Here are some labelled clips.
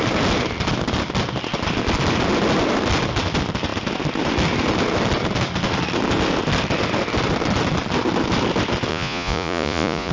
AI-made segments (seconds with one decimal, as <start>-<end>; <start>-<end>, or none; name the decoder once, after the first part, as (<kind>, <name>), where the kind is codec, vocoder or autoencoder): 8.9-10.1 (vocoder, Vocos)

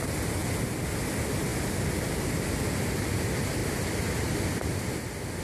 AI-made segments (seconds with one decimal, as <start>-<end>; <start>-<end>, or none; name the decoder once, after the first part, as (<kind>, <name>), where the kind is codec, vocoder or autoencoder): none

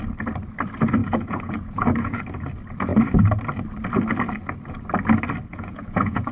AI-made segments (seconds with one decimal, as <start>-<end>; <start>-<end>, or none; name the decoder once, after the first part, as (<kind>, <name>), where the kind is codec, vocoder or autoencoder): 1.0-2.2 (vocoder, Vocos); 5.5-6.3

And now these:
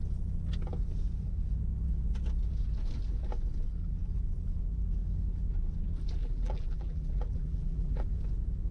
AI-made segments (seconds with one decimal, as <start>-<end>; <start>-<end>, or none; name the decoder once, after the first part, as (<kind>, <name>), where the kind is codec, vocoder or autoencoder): 6.2-8.0 (vocoder, BigVGAN v2)

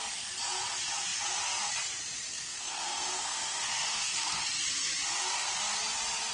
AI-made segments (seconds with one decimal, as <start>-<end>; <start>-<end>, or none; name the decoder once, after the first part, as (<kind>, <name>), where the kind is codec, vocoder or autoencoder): 2.3-4.4 (codec, SNAC)

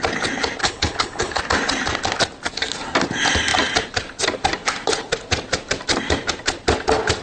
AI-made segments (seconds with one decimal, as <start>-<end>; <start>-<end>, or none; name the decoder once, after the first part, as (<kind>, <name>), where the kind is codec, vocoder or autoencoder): 0.6-1.4 (codec, HILCodec)